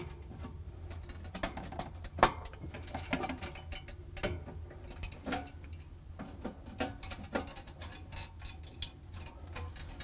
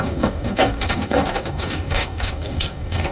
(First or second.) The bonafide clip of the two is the first